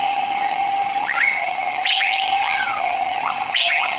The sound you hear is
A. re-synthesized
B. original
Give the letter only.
A